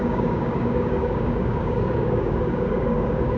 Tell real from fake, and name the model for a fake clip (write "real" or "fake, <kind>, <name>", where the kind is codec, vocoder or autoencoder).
fake, codec, DAC